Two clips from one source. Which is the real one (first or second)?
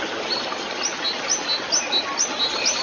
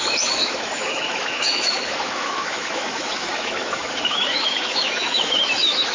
first